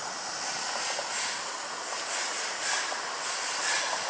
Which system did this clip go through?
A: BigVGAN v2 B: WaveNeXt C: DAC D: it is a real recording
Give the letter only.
D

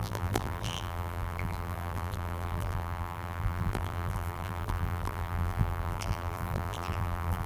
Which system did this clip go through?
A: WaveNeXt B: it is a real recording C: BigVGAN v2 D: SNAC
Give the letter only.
C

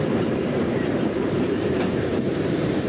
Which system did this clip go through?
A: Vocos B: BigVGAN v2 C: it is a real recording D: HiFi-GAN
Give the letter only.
B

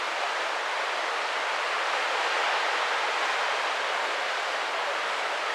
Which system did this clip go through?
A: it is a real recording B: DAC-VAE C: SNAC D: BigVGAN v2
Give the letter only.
A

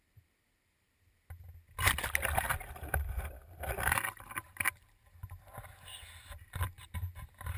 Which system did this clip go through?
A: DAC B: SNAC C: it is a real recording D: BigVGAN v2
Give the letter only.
C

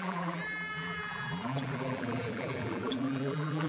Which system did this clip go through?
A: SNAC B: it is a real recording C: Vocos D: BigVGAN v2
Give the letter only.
D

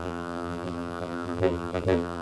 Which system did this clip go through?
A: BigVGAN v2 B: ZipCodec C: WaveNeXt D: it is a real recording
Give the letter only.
A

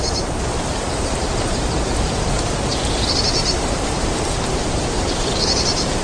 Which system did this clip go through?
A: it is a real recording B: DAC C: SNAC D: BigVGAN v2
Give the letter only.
D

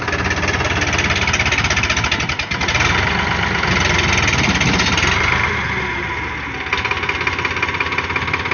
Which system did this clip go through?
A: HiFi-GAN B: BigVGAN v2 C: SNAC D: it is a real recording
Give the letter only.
D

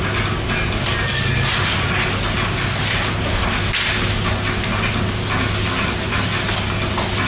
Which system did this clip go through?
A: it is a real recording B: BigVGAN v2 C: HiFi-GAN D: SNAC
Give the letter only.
A